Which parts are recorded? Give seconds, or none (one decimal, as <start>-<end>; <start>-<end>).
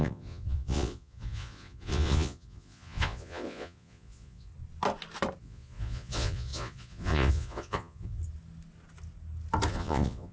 4.5-5.4; 8.2-9.7